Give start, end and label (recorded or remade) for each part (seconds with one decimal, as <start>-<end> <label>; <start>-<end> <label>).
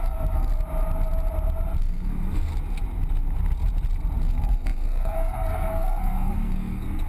0.0-0.5 remade; 0.5-1.8 recorded; 1.8-2.5 remade; 2.5-4.2 recorded; 4.2-7.1 remade